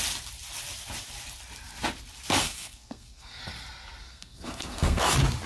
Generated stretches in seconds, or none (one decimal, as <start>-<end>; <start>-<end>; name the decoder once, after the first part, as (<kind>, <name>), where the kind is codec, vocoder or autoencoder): 2.4-3.4 (codec, SNAC); 4.0-5.1